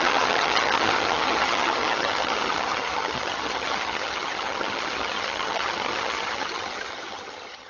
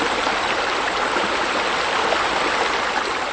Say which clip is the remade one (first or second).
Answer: first